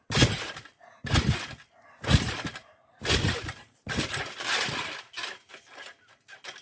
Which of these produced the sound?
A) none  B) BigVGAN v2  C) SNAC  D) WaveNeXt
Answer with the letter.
A